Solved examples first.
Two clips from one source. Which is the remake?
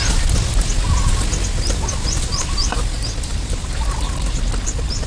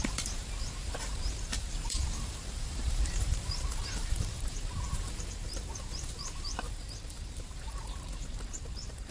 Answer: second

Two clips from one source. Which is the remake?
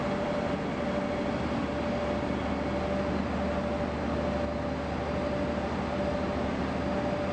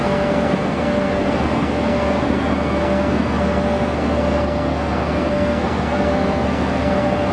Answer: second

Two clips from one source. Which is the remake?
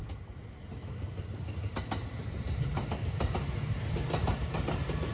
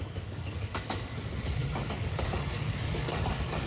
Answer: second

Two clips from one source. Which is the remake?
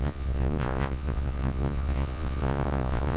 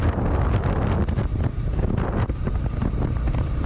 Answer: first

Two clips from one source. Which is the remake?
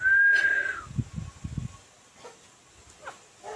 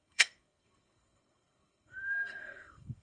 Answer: second